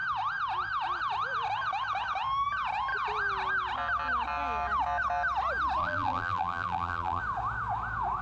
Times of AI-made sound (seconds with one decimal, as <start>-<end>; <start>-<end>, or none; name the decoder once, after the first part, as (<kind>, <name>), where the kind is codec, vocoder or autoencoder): 5.8-7.2 (vocoder, BigVGAN v2)